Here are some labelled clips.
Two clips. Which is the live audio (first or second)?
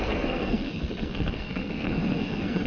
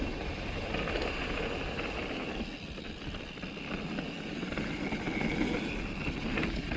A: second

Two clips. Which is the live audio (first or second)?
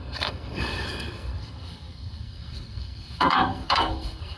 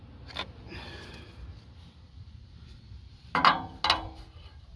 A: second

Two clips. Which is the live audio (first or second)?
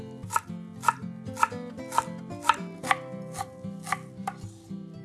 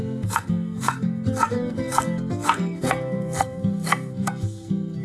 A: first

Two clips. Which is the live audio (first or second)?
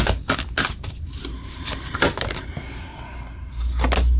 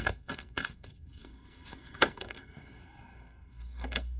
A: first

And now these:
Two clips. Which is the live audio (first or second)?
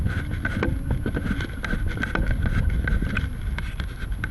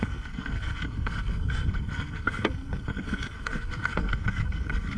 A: first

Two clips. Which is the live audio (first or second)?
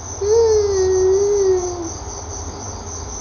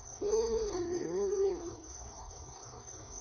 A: first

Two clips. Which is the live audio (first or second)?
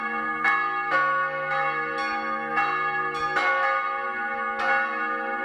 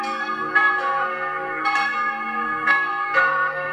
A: first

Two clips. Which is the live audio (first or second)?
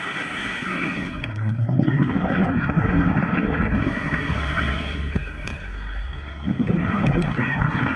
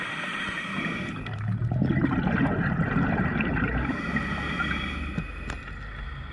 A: second